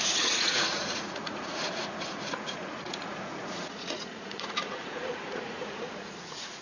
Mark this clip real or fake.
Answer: fake